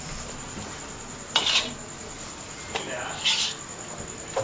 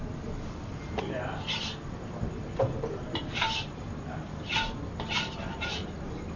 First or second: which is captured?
first